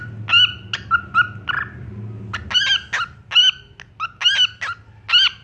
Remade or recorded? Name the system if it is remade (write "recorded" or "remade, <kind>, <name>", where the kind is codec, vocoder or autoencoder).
recorded